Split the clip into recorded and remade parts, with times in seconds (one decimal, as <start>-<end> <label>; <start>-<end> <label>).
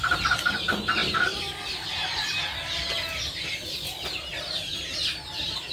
0.0-5.7 recorded